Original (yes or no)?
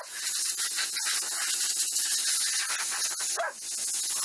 yes